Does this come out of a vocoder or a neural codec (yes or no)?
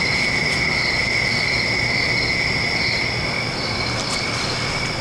no